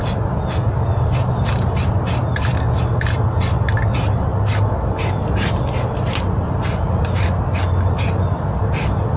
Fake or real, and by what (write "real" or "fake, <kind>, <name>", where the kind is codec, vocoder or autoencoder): real